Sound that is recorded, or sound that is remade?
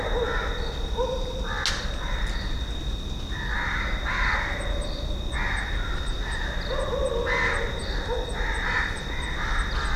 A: recorded